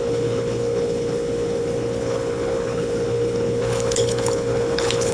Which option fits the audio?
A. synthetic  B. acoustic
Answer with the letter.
A